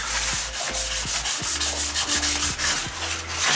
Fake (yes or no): no